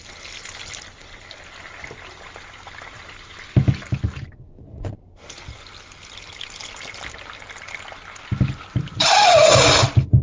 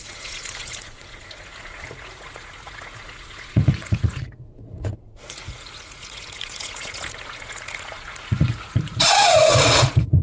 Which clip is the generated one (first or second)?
second